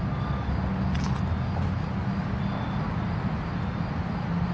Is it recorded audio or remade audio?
recorded